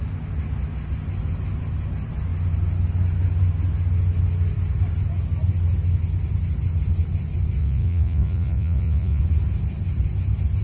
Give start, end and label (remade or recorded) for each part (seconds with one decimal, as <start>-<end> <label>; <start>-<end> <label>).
0.0-7.6 recorded; 7.6-9.2 remade; 9.2-10.6 recorded